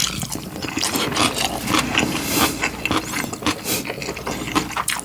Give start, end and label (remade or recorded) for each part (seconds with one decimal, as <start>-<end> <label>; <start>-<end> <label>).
0.0-5.0 recorded